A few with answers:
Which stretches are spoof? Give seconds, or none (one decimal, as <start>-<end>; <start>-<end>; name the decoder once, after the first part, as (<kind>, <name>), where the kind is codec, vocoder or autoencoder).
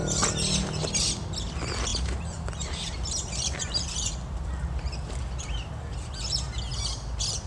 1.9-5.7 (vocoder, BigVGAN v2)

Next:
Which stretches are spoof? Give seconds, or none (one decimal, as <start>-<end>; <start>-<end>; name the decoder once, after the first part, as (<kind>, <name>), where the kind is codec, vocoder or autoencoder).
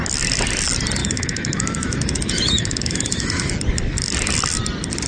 1.0-3.5 (autoencoder, DAC-VAE)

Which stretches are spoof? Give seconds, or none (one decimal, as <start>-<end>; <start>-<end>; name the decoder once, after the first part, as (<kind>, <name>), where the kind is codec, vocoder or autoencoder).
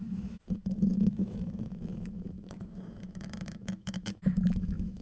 0.0-5.0 (autoencoder, DAC-VAE)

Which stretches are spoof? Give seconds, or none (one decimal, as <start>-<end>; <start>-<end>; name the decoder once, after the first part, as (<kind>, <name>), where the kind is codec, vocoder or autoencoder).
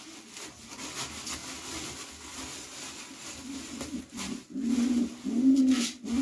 none